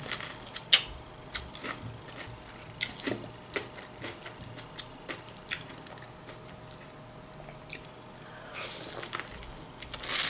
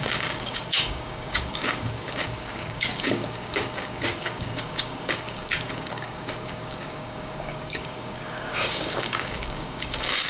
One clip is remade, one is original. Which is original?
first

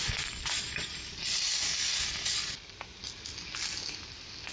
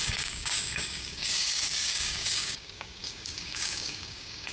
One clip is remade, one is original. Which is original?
first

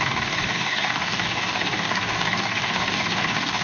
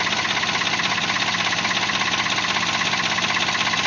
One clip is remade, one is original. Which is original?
second